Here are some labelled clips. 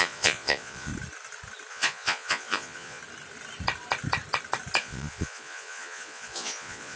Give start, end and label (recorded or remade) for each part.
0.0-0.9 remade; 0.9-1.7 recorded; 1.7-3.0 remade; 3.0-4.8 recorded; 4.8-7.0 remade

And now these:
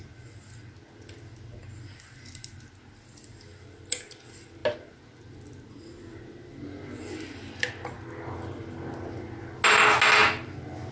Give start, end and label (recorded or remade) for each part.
0.0-10.9 recorded

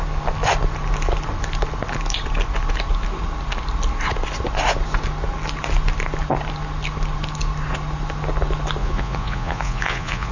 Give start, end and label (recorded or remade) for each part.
0.0-8.8 recorded; 8.8-10.3 remade